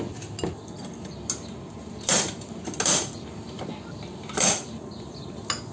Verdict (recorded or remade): recorded